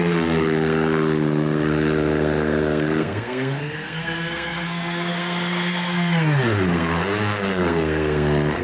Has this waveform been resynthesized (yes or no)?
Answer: yes